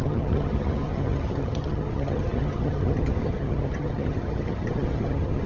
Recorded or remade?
remade